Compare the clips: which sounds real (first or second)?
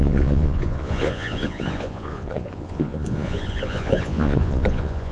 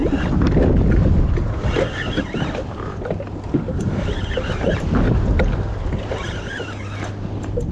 second